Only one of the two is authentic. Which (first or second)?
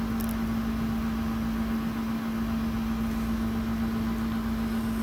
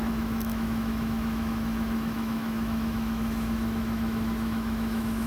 first